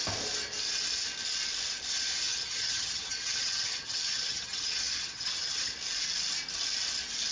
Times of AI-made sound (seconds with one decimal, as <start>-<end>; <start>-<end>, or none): 2.3-5.7